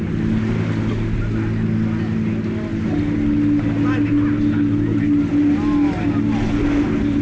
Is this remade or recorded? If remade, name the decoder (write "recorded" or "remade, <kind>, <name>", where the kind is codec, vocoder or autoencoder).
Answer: recorded